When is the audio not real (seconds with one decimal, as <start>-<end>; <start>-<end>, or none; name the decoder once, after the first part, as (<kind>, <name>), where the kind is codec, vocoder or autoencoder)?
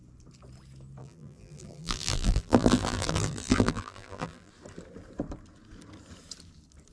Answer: 1.0-4.5 (vocoder, BigVGAN v2)